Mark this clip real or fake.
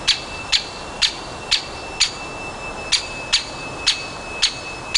real